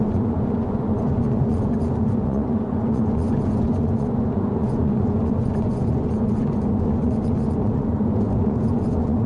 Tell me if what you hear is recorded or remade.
remade